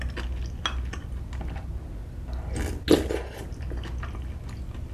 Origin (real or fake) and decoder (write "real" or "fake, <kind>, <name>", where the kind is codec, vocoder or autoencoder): real